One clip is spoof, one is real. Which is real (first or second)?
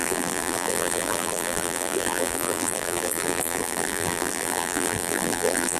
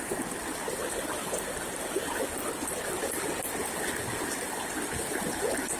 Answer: second